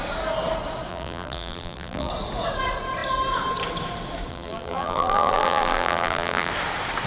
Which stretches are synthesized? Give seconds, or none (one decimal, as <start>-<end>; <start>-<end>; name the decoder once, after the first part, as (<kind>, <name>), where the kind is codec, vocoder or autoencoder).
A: 0.9-2.1 (vocoder, BigVGAN v2); 4.3-6.5